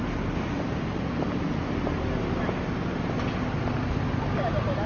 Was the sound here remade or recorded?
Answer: recorded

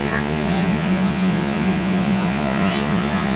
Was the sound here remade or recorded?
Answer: remade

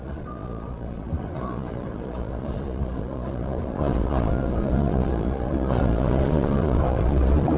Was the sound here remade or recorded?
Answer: remade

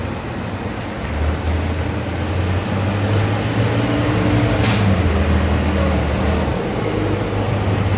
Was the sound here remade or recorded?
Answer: recorded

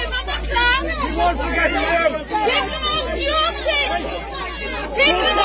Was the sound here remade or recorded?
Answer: recorded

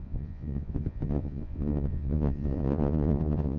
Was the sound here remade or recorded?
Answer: remade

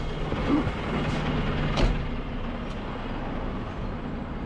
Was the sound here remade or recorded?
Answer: recorded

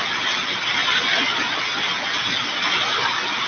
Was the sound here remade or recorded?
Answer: recorded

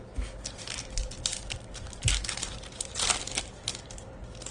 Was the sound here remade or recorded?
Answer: recorded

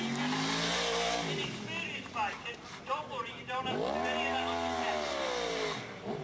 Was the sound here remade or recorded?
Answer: recorded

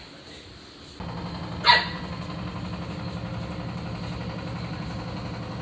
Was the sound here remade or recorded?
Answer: recorded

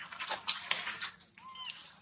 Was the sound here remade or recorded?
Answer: recorded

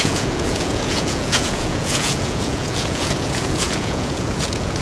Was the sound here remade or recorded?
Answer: remade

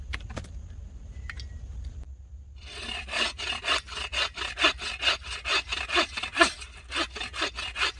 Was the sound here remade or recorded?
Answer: recorded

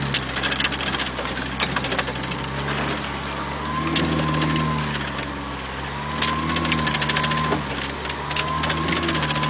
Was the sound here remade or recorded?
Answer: recorded